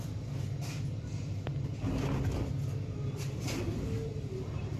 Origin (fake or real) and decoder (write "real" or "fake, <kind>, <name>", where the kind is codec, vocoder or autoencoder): real